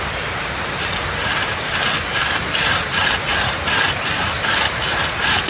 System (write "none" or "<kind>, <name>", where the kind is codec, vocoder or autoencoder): vocoder, BigVGAN v2